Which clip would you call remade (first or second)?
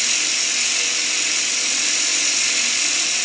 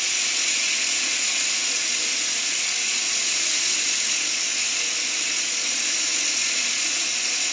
second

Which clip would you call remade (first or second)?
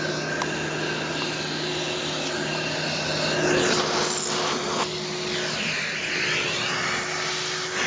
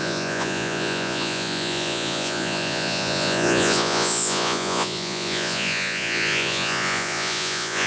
second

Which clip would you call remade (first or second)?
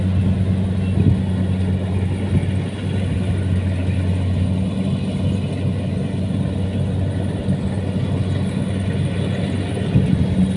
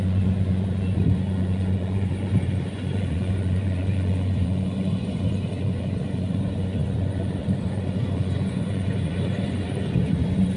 second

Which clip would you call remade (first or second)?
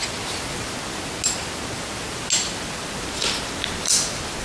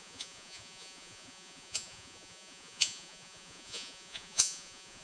second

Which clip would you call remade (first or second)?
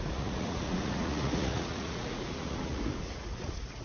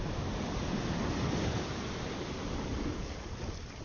first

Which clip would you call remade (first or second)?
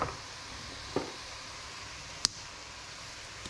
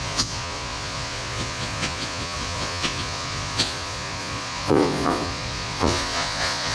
second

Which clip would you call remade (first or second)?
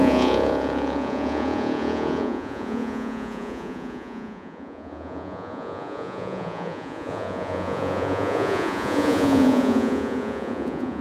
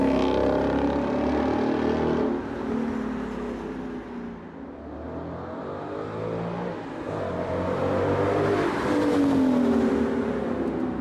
first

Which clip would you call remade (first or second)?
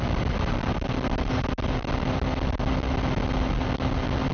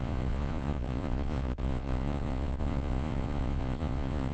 second